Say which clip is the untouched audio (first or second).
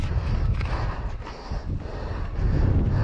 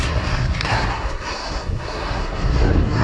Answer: first